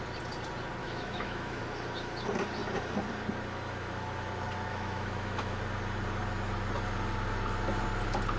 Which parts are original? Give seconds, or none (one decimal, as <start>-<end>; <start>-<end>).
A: 0.0-0.8; 1.6-4.7; 5.6-8.4